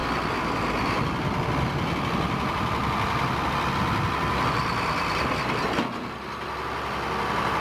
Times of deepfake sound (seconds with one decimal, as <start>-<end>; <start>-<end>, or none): none